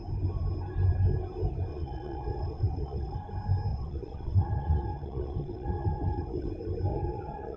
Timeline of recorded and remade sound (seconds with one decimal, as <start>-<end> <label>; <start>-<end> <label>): 0.0-1.7 recorded; 1.7-3.2 remade; 3.2-3.7 recorded; 3.7-6.5 remade; 6.5-6.9 recorded; 6.9-7.6 remade